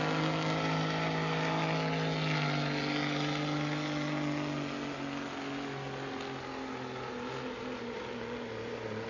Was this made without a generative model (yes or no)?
yes